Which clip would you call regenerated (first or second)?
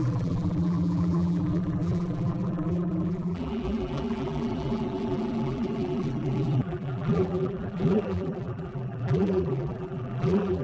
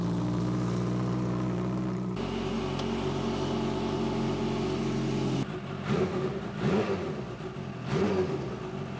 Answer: first